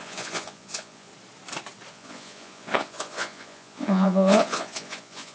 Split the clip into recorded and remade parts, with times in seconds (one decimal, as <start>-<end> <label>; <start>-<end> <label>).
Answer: 0.0-1.1 remade; 1.1-1.9 recorded; 1.9-5.3 remade